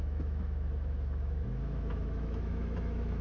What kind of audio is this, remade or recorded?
remade